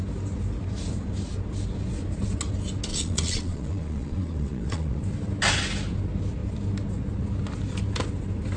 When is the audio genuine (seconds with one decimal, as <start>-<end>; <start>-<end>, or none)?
0.0-2.9; 5.0-8.6